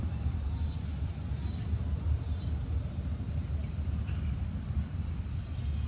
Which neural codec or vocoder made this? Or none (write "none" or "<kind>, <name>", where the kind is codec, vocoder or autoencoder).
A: none